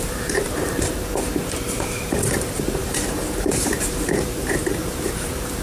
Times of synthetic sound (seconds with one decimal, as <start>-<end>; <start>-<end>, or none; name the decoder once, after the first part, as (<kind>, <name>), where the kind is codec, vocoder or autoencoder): 0.0-5.6 (vocoder, BigVGAN v2)